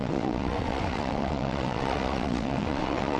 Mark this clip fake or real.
fake